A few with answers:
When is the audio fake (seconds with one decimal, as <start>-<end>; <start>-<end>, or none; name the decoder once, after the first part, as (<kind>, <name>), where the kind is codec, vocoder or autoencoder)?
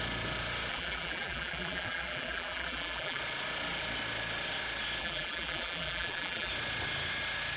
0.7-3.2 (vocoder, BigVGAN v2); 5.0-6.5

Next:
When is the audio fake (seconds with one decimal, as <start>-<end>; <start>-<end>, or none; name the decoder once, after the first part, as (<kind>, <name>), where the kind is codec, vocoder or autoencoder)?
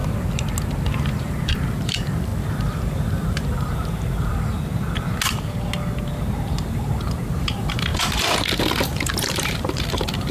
0.9-4.3 (vocoder, BigVGAN v2); 7.4-10.3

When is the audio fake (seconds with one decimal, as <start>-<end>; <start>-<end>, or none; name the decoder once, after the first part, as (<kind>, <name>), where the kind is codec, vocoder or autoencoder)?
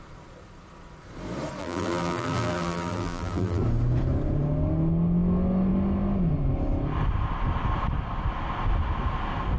1.6-3.6 (vocoder, BigVGAN v2)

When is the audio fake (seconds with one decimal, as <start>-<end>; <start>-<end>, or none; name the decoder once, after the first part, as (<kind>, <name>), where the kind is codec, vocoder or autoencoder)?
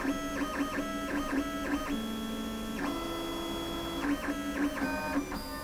none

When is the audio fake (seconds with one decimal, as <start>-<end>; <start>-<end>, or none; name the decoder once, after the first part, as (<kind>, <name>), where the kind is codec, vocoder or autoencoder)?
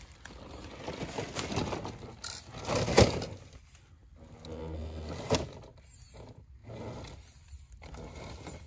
none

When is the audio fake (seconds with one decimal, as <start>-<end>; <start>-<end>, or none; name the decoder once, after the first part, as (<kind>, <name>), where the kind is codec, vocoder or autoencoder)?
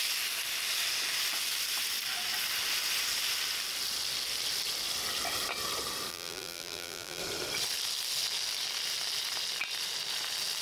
6.1-7.2 (vocoder, BigVGAN v2)